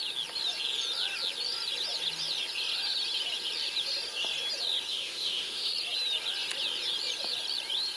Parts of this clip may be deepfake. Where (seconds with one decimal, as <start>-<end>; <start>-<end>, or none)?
4.9-5.7